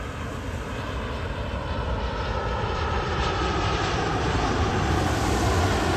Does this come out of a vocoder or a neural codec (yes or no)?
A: yes